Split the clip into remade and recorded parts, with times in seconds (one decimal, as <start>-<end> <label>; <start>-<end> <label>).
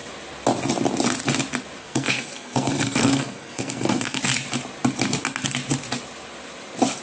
0.0-1.8 recorded; 1.8-4.2 remade; 4.2-7.0 recorded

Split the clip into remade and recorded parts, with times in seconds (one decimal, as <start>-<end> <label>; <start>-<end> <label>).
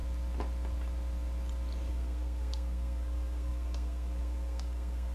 0.0-1.9 recorded; 1.9-5.1 remade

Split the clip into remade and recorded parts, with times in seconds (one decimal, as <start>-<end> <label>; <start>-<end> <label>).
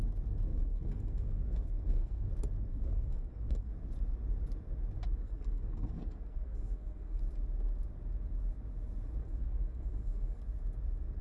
0.0-0.5 recorded; 0.5-2.3 remade; 2.3-2.7 recorded; 2.7-3.7 remade; 3.7-5.2 recorded; 5.2-7.2 remade; 7.2-9.2 recorded; 9.2-10.4 remade; 10.4-11.2 recorded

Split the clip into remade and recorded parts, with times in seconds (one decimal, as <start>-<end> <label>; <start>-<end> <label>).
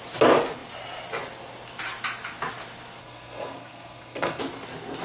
0.0-3.0 recorded; 3.0-4.4 remade; 4.4-5.0 recorded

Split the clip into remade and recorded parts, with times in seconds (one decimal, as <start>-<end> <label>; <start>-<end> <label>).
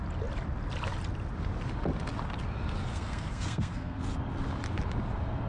0.0-2.9 recorded; 2.9-4.0 remade; 4.0-5.5 recorded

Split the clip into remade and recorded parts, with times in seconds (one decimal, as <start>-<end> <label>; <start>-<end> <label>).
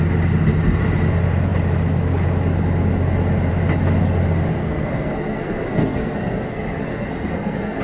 0.0-4.6 recorded; 4.6-7.8 remade